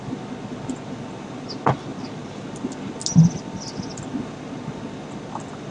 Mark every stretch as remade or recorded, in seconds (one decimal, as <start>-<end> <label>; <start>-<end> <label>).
0.0-5.7 recorded